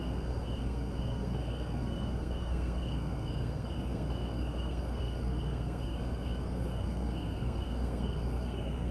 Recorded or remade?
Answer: remade